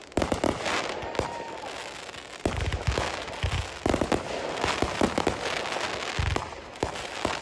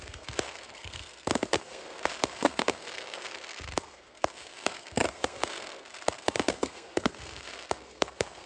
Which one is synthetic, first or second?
second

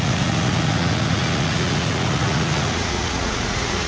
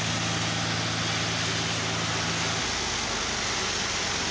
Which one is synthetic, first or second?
first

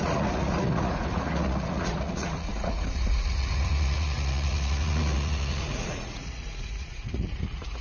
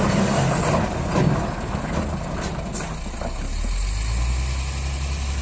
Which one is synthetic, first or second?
first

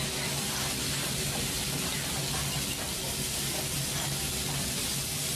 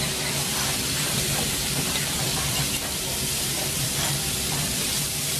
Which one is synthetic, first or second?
second